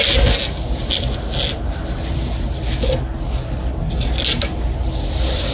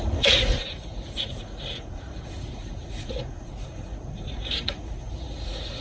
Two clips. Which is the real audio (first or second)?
first